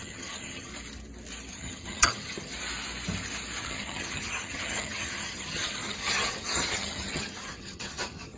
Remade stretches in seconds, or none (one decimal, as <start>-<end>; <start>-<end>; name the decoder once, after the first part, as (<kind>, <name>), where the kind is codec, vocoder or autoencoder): 0.0-0.7 (vocoder, HiFi-GAN); 1.5-2.5; 3.6-8.4